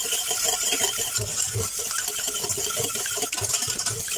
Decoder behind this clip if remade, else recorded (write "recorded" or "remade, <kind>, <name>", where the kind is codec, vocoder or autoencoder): recorded